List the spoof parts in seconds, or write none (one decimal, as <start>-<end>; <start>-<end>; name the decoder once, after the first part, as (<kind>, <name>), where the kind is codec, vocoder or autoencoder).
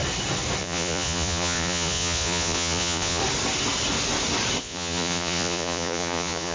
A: 0.6-3.2 (vocoder, Vocos); 4.6-6.5